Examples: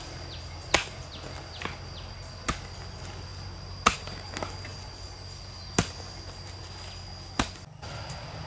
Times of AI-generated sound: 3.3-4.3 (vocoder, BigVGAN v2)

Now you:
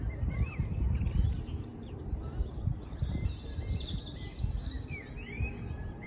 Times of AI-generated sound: 1.7-3.3 (vocoder, BigVGAN v2)

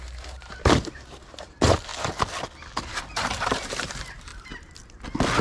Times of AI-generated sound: 0.0-1.9 (vocoder, BigVGAN v2); 3.0-4.3

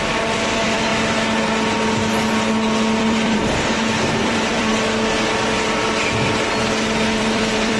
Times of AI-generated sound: 0.0-0.9 (vocoder, BigVGAN v2); 3.0-4.7; 7.2-7.8

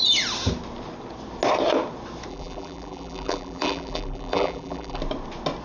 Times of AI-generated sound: 2.3-5.0 (vocoder, BigVGAN v2)

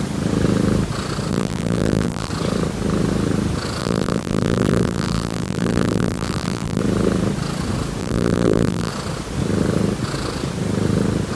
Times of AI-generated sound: 1.3-2.3 (vocoder, BigVGAN v2); 3.8-6.8; 8.0-8.9

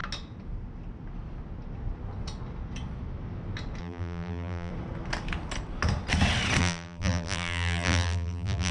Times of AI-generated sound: 3.8-4.7 (vocoder, BigVGAN v2); 6.6-8.7

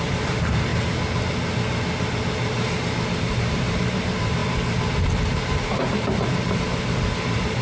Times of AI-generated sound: 0.0-0.7 (vocoder, BigVGAN v2); 3.2-4.4; 5.1-7.6